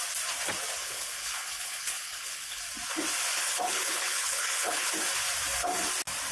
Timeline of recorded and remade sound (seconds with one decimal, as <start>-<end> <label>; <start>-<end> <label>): 0.0-0.8 recorded; 0.8-2.6 remade; 2.6-3.3 recorded; 3.3-4.9 remade; 4.9-6.3 recorded